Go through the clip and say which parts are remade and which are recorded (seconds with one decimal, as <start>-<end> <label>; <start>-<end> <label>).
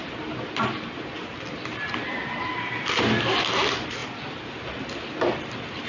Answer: 0.0-5.9 recorded